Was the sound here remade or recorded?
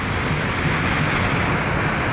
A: recorded